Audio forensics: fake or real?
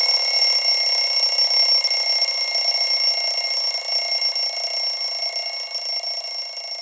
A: real